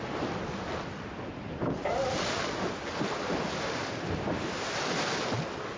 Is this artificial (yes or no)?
no